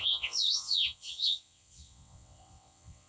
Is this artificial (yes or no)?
yes